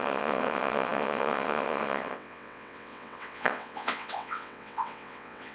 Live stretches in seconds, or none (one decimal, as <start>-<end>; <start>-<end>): none

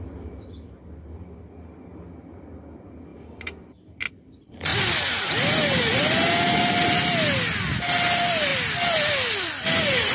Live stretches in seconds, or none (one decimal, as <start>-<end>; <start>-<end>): 0.0-10.1

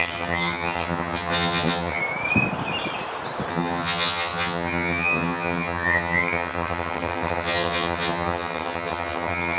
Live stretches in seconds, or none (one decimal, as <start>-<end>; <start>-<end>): 2.0-3.5